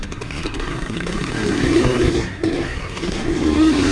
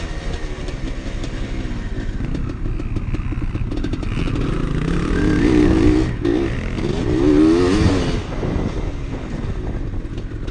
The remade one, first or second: first